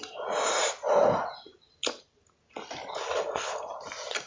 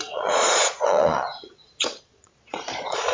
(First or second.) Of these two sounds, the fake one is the second